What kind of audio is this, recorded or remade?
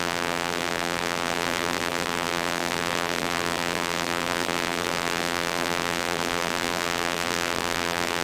remade